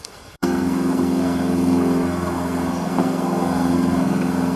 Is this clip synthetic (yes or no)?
yes